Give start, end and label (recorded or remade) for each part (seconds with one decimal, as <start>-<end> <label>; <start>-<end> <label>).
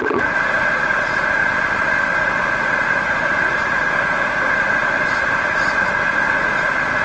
0.0-1.4 remade; 1.4-2.1 recorded; 2.1-7.0 remade